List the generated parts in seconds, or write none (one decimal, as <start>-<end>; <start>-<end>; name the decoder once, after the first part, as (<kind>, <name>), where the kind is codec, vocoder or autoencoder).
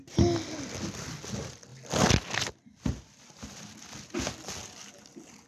none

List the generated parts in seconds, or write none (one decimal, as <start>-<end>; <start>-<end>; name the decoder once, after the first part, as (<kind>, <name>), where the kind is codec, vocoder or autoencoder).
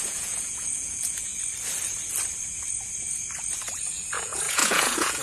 0.0-1.3 (vocoder, Vocos); 3.8-5.2